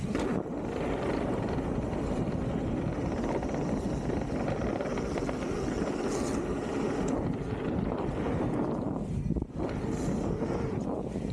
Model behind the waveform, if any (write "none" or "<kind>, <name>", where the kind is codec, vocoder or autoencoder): none